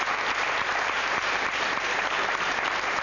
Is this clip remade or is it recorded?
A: remade